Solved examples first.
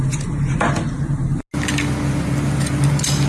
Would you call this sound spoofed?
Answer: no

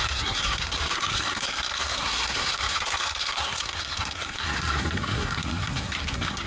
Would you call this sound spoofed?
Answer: yes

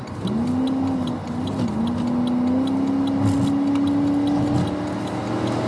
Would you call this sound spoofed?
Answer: no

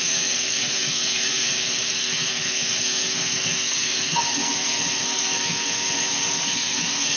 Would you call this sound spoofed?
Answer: yes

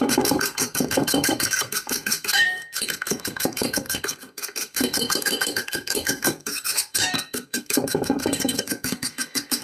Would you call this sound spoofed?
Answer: yes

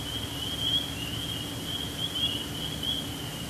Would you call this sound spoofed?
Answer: no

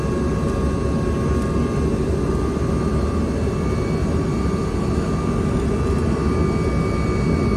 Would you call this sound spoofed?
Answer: no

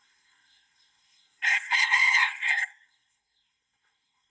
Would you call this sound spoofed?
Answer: yes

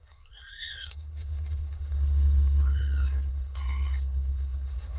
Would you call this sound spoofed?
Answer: yes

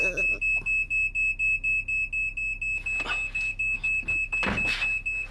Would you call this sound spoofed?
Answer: no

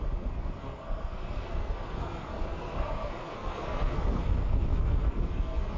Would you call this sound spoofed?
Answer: yes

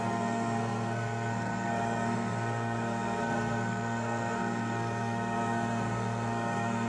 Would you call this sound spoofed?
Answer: yes